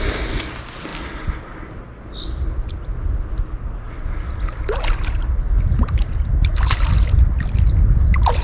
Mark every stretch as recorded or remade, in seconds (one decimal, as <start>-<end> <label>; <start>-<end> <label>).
0.0-8.4 recorded